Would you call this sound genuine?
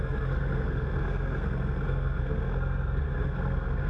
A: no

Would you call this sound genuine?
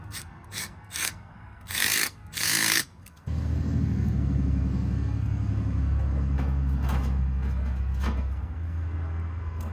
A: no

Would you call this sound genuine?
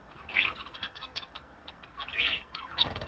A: no